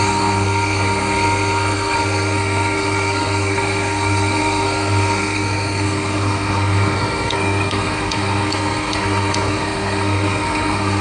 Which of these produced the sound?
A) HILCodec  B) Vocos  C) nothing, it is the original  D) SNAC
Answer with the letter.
D